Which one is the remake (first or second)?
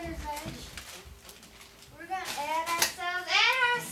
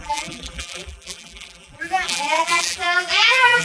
second